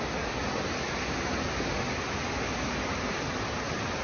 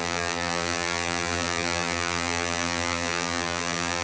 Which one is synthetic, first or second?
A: second